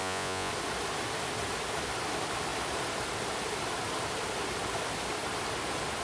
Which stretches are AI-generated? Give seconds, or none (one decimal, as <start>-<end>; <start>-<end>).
0.0-0.5

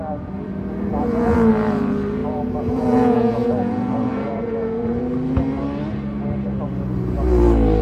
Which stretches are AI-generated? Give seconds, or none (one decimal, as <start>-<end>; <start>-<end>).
0.9-1.5; 2.2-5.0

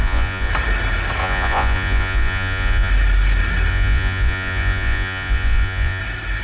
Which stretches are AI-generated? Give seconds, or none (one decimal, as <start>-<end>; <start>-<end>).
0.0-0.5; 1.2-2.9; 3.7-6.0

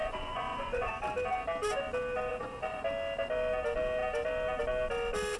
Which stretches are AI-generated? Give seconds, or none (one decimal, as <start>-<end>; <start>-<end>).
0.0-0.9; 2.3-2.8

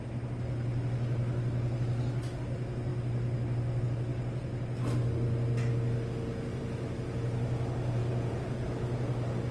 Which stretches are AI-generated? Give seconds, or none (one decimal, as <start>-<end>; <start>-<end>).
8.0-8.7

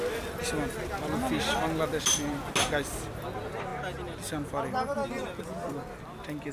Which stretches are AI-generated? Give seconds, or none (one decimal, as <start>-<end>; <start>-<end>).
none

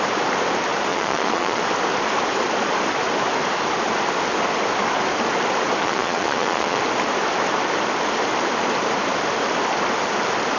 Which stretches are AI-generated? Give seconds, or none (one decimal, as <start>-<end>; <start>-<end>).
0.9-1.6; 5.8-6.8